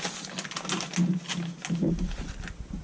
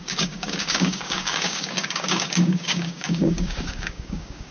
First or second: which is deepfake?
second